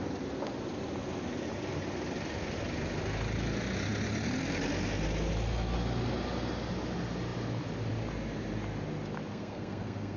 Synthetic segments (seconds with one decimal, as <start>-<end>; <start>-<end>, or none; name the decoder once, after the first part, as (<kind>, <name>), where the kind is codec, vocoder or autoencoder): 9.3-10.2 (codec, SNAC)